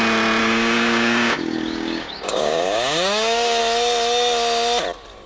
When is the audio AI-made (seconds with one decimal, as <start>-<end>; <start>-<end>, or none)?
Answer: 0.4-3.6